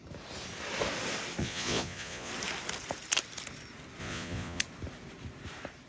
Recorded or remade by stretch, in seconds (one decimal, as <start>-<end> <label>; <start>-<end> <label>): 0.0-1.4 recorded; 1.4-2.3 remade; 2.3-4.0 recorded; 4.0-4.6 remade; 4.6-5.9 recorded